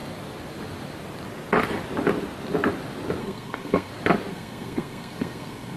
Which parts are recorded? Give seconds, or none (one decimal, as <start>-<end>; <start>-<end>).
0.0-3.2; 3.9-4.3